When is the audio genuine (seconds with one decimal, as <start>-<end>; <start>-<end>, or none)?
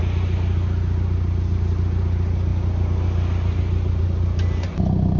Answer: 0.0-5.2